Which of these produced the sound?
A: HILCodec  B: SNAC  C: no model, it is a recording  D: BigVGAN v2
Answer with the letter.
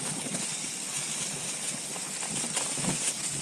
C